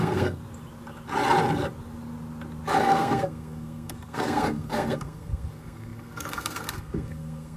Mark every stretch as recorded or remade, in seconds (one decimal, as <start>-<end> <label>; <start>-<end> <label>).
0.0-0.4 remade; 0.4-2.8 recorded; 2.8-7.6 remade